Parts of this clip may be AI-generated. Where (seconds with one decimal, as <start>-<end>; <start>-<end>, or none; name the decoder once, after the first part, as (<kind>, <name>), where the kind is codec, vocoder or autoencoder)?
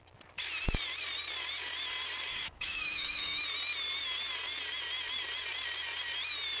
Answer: 2.3-3.4 (autoencoder, DAC-VAE)